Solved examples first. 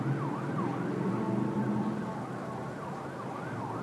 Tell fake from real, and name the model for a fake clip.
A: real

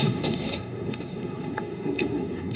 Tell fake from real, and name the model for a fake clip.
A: fake, codec, SNAC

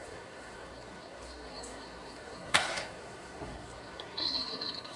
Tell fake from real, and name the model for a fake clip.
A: fake, codec, SNAC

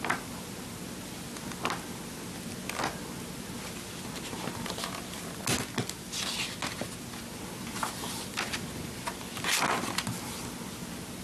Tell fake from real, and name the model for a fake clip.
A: real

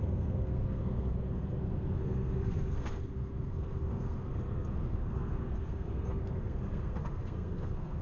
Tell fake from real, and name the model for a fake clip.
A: fake, codec, SNAC